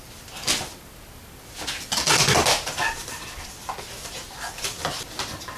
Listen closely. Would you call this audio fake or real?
real